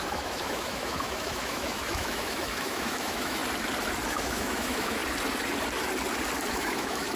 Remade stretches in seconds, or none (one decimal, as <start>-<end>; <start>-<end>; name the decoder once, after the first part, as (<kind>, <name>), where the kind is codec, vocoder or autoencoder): 0.0-3.4 (autoencoder, DAC-VAE); 4.1-5.0; 6.5-7.2